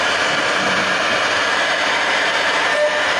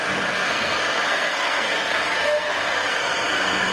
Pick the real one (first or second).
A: first